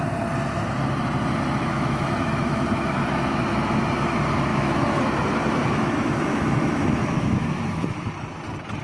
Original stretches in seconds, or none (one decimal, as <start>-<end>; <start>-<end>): 0.0-1.7; 3.8-4.5; 5.0-5.6; 8.1-8.8